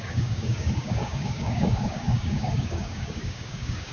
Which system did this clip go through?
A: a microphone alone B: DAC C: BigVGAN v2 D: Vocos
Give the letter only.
B